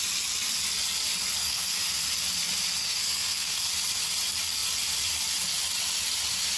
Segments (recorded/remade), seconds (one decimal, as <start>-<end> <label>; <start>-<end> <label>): 0.0-1.4 recorded; 1.4-2.0 remade; 2.0-2.8 recorded; 2.8-3.7 remade; 3.7-6.6 recorded